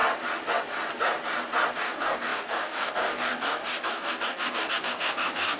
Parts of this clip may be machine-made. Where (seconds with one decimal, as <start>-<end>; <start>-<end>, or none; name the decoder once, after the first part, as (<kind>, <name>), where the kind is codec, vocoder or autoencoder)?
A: 1.8-5.6 (codec, DAC)